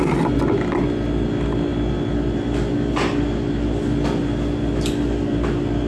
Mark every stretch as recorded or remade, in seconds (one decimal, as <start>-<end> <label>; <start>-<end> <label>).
0.0-5.9 recorded